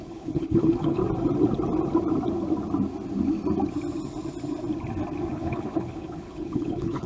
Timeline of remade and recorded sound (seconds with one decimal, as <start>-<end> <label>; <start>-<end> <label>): 0.0-1.0 remade; 1.0-5.3 recorded; 5.3-7.1 remade

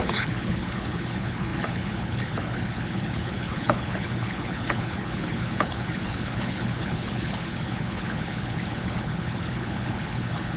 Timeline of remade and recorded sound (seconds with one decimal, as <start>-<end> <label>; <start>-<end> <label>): 0.0-10.6 remade

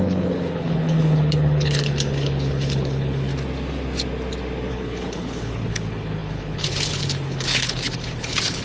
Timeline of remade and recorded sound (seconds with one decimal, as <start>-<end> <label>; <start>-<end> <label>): 0.0-3.3 remade; 3.3-4.7 recorded; 4.7-8.6 remade

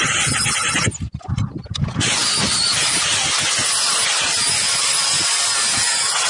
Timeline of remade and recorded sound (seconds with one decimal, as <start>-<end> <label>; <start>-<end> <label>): 0.0-6.3 recorded

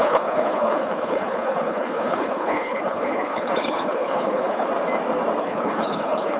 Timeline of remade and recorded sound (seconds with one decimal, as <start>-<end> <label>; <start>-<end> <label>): 0.0-4.7 remade; 4.7-5.4 recorded; 5.4-6.4 remade

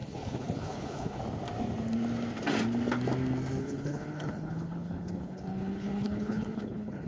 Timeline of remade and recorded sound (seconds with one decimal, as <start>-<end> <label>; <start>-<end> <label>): 0.0-1.2 remade; 1.2-3.6 recorded; 3.6-7.1 remade

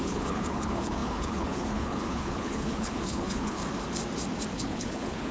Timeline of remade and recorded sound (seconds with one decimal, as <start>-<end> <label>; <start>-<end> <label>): 0.0-3.6 remade; 3.6-4.5 recorded; 4.5-5.3 remade

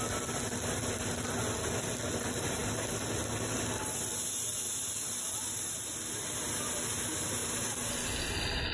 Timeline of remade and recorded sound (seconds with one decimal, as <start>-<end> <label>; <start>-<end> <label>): 0.0-8.7 recorded